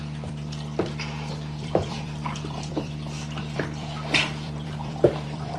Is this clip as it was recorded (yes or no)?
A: no